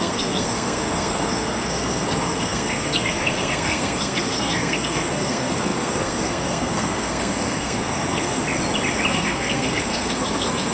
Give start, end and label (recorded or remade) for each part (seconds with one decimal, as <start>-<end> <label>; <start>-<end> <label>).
0.0-8.4 remade; 8.4-9.1 recorded; 9.1-10.7 remade